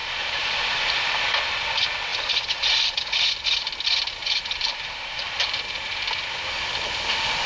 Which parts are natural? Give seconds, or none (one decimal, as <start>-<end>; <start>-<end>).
1.1-2.1; 2.9-4.2; 5.5-7.5